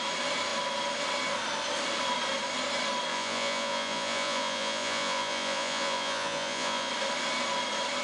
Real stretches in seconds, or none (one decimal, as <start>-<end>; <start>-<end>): 0.0-3.1; 6.9-8.0